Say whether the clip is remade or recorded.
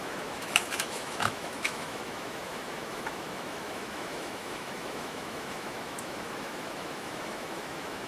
remade